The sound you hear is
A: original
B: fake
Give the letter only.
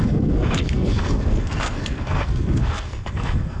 B